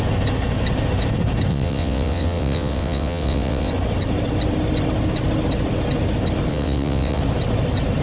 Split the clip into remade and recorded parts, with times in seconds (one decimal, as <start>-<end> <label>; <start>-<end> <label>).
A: 0.0-1.5 recorded; 1.5-3.7 remade; 3.7-6.5 recorded; 6.5-7.2 remade; 7.2-8.0 recorded